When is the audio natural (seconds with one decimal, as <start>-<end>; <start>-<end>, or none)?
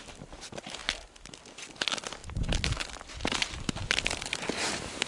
0.0-5.1